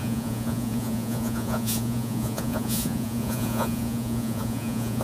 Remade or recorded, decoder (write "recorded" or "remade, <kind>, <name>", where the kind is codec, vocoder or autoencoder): remade, vocoder, Vocos